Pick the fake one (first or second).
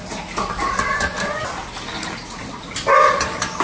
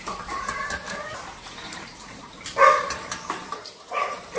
second